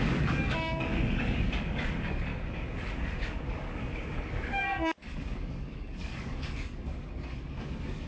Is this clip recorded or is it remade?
remade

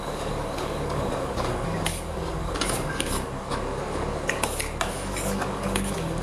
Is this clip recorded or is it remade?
remade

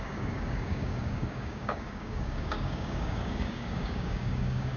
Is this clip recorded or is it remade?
remade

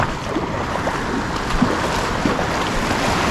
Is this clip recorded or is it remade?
recorded